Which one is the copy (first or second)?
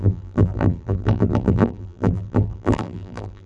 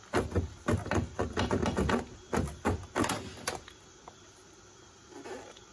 first